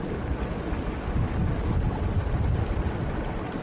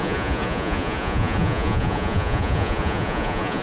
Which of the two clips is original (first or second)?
first